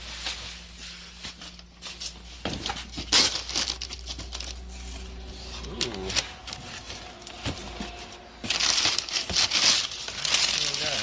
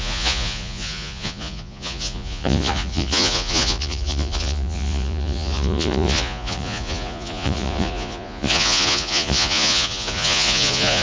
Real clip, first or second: first